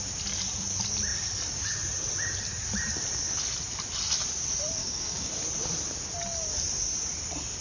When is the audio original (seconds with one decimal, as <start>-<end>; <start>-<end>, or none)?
0.0-4.8; 5.3-7.6